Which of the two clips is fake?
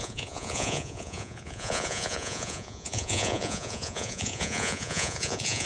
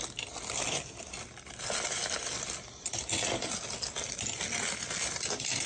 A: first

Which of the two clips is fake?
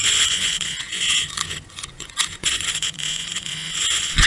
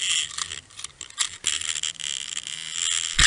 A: first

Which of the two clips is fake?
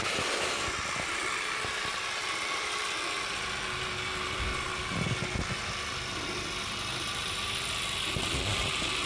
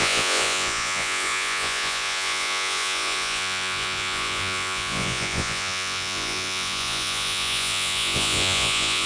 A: second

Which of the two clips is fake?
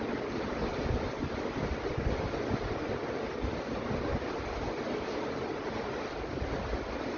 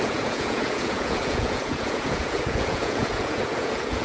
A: second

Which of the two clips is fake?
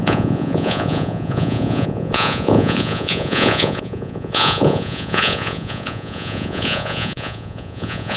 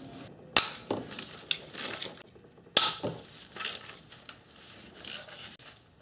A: first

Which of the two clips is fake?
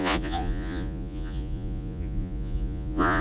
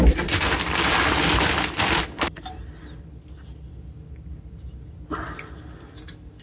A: first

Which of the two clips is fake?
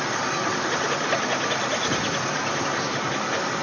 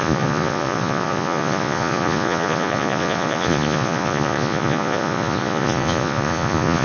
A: second